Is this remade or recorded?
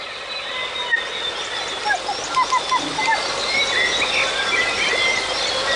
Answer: recorded